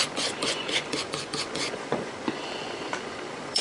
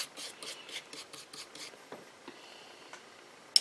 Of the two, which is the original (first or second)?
second